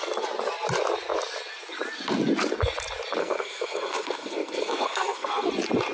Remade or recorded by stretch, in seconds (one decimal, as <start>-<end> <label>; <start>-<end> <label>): 0.0-3.2 recorded; 3.2-5.5 remade; 5.5-5.9 recorded